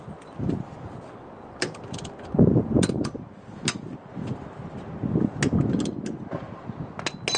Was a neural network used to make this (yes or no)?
no